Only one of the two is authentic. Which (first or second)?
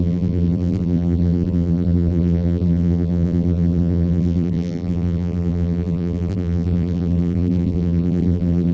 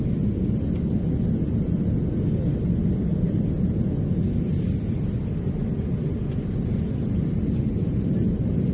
second